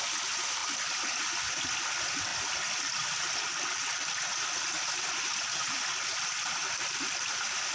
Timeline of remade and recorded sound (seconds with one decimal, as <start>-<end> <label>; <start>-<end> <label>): 0.0-6.1 recorded; 6.1-7.2 remade; 7.2-7.7 recorded